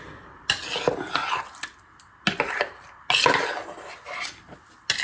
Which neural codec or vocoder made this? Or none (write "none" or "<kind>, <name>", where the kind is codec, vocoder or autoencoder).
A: none